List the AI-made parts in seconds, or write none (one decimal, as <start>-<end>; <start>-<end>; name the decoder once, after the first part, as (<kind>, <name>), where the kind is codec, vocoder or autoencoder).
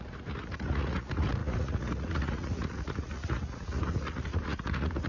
0.0-5.1 (vocoder, Vocos)